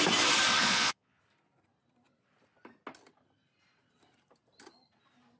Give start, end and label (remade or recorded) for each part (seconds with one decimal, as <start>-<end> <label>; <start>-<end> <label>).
0.0-0.6 recorded; 0.6-1.2 remade; 1.2-5.4 recorded